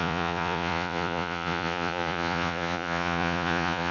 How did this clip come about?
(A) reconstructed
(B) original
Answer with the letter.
A